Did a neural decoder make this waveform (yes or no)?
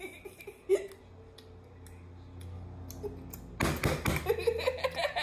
no